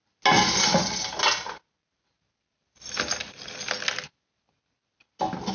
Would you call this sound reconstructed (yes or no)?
no